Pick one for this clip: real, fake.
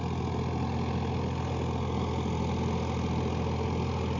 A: real